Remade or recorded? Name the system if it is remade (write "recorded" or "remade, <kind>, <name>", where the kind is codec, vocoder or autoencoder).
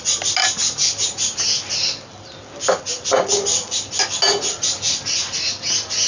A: recorded